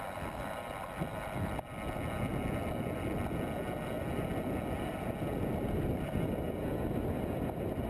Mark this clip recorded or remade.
recorded